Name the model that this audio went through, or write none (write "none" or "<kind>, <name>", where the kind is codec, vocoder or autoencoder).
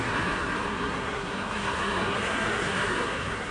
codec, SNAC